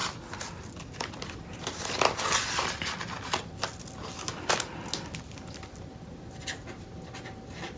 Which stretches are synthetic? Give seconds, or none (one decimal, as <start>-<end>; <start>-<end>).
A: none